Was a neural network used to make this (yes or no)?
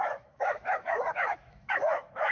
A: yes